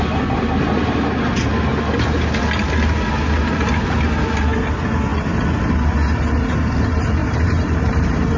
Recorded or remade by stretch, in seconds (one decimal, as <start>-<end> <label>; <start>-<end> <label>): 0.0-7.2 recorded; 7.2-8.4 remade